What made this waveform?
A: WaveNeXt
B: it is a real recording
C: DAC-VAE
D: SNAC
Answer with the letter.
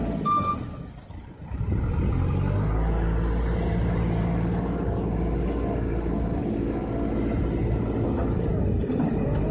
B